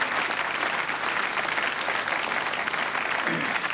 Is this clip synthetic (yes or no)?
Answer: no